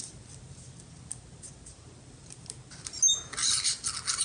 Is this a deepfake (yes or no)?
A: no